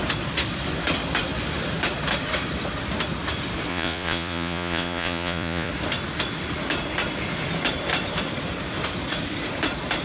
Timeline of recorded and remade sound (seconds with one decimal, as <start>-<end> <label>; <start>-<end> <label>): 0.0-3.7 recorded; 3.7-5.7 remade; 5.7-10.0 recorded